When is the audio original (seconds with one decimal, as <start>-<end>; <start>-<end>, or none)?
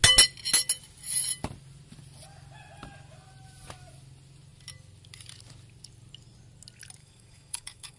0.0-7.0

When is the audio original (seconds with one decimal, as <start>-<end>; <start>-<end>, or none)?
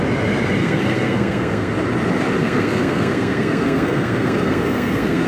0.0-0.6; 1.7-2.4